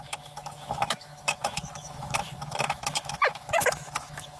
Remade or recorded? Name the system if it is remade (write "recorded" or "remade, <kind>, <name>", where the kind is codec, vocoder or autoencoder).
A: remade, autoencoder, DAC-VAE